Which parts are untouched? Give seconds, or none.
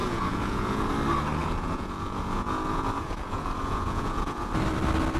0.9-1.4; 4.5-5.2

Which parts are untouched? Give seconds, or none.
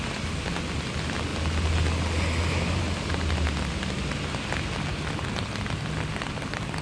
0.0-6.8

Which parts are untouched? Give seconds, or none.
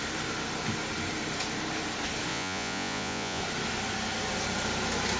0.0-2.3; 3.4-5.2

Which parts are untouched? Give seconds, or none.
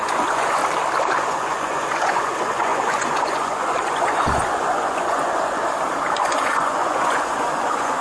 0.6-1.1; 5.6-6.3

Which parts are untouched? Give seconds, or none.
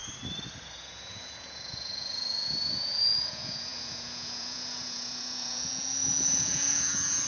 0.0-0.7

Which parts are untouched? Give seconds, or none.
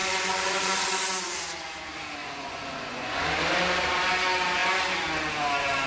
1.4-2.2; 3.3-5.9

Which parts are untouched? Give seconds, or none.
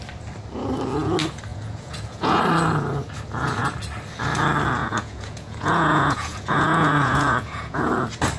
0.0-1.5; 2.4-4.8; 7.9-8.4